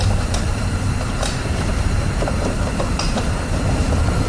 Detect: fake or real fake